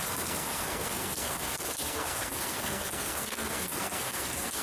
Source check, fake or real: fake